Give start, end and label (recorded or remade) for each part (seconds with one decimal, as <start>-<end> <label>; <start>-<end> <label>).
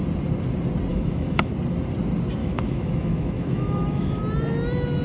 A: 0.0-0.9 recorded; 0.9-1.5 remade; 1.5-2.4 recorded; 2.4-4.2 remade; 4.2-5.0 recorded